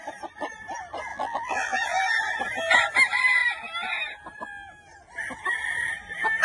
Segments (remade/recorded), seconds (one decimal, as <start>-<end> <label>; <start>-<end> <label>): 0.0-1.1 recorded; 1.1-2.1 remade; 2.1-6.4 recorded